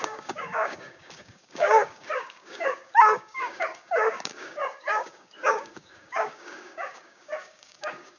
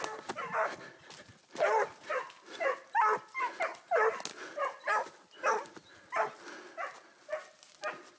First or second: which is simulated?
first